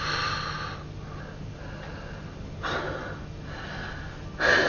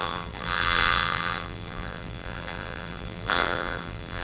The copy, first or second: second